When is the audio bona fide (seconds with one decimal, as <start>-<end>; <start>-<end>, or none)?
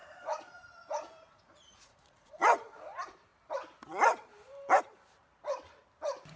2.8-6.4